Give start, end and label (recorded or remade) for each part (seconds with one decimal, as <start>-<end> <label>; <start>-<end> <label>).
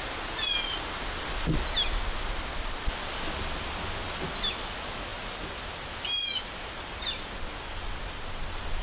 0.0-8.8 recorded